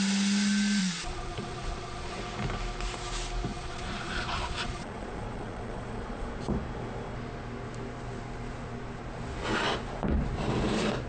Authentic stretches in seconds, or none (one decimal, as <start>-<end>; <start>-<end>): 0.0-0.8; 2.2-3.5; 6.3-11.1